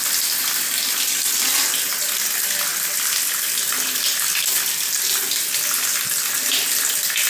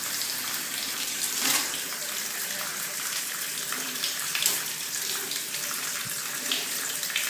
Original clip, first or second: first